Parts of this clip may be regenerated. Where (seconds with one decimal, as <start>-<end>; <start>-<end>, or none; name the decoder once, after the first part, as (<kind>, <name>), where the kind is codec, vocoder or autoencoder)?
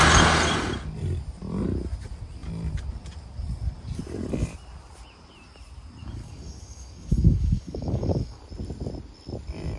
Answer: 6.0-8.4 (codec, DAC)